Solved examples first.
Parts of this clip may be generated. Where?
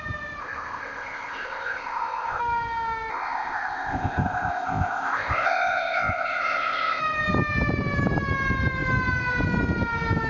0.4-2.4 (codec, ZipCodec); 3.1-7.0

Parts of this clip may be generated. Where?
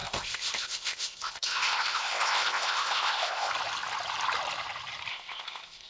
0.0-3.5 (codec, ZipCodec); 5.1-5.9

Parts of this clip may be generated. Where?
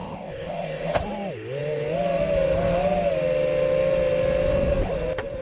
0.0-1.0 (codec, ZipCodec)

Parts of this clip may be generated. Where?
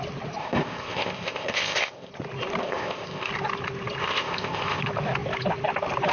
0.4-2.1 (codec, ZipCodec); 2.6-3.3; 4.0-4.8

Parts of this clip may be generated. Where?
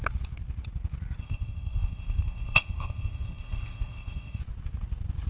1.2-4.4 (codec, ZipCodec)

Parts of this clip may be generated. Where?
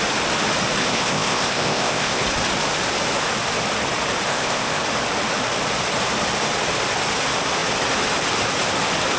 0.8-2.2 (codec, ZipCodec); 4.3-4.8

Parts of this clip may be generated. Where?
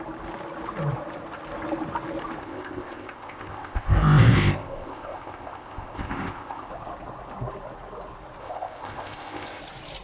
2.4-6.7 (codec, ZipCodec); 8.4-9.6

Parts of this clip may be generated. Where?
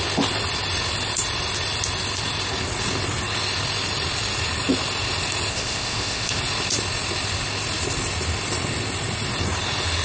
5.5-6.4 (codec, ZipCodec)